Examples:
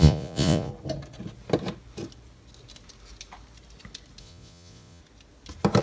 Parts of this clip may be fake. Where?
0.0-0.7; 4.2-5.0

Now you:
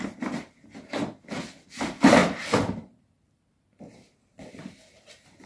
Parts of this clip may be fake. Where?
none

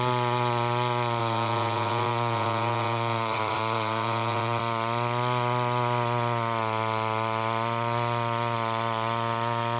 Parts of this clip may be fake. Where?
1.2-4.6

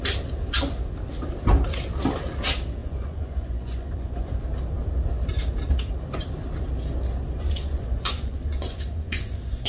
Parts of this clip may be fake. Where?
2.8-4.3; 7.6-9.7